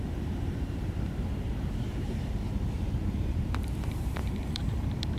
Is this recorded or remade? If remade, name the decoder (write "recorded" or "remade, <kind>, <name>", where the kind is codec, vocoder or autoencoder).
remade, vocoder, BigVGAN v2